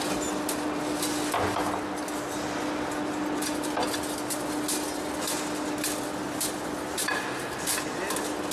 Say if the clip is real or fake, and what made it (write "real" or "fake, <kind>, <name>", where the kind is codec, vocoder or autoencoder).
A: real